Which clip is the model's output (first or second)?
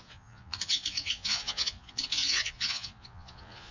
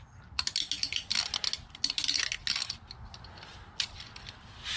first